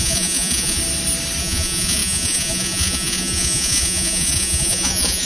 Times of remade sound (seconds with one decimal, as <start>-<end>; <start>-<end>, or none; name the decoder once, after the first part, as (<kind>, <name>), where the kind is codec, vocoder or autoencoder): 0.0-0.8 (vocoder, Vocos); 1.4-5.2